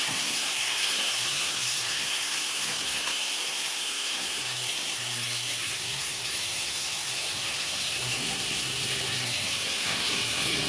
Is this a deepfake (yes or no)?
yes